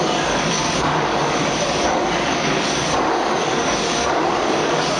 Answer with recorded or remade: remade